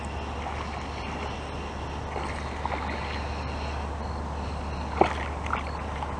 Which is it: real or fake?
real